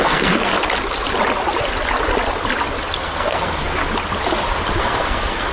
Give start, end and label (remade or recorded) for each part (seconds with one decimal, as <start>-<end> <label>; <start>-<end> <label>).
0.0-0.5 remade; 0.5-3.0 recorded; 3.0-3.8 remade; 3.8-4.8 recorded; 4.8-5.5 remade